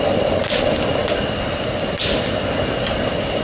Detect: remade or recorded recorded